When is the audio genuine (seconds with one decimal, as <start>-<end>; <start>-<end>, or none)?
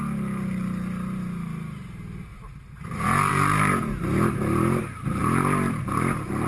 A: 0.0-2.3; 3.3-5.2; 5.8-6.5